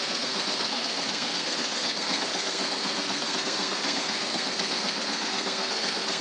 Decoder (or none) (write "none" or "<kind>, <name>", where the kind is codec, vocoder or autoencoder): codec, SNAC